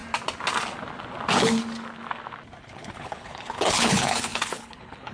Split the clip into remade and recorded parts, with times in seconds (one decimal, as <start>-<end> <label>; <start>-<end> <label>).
0.0-2.6 recorded; 2.6-5.1 remade